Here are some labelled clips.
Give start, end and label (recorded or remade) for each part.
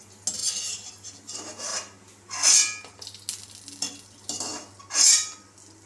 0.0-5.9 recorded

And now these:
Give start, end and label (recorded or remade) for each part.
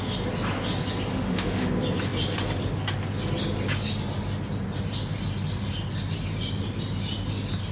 0.0-1.1 recorded; 1.1-1.7 remade; 1.7-7.7 recorded